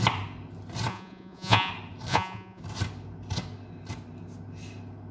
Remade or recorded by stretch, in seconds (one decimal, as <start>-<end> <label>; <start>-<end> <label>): 0.0-0.9 recorded; 0.9-1.7 remade; 1.7-2.1 recorded; 2.1-2.6 remade; 2.6-5.1 recorded